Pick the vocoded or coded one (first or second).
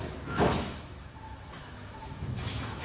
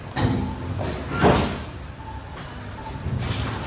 first